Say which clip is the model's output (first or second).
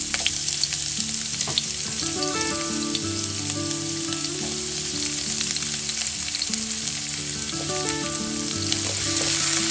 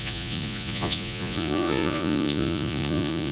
second